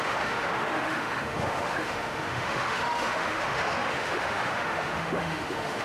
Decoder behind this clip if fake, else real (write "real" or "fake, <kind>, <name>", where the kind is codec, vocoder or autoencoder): fake, autoencoder, DAC-VAE